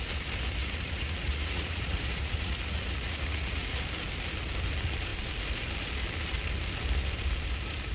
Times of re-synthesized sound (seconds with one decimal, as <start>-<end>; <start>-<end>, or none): 0.6-3.8